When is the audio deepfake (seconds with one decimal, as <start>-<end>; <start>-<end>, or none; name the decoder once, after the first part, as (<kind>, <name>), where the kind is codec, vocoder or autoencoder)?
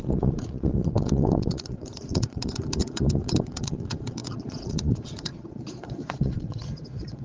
0.0-7.2 (vocoder, Vocos)